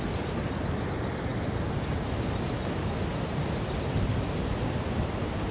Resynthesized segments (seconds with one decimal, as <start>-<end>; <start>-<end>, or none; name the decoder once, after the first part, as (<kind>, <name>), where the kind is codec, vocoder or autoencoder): none